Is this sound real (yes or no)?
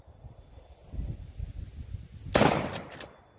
yes